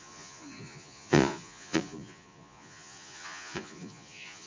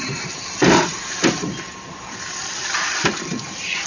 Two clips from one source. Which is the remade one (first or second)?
first